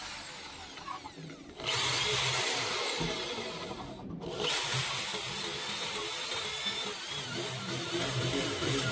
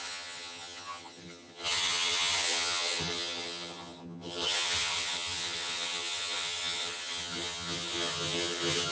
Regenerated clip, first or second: second